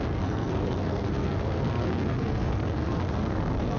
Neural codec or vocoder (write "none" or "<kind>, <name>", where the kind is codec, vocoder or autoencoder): codec, SNAC